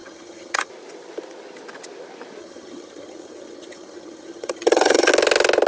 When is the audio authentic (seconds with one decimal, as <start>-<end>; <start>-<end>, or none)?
0.7-2.4; 5.1-5.7